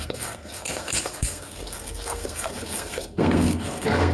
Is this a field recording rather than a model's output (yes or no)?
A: no